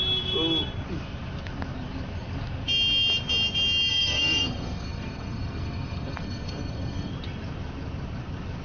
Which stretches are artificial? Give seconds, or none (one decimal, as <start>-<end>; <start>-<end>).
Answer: 3.9-7.1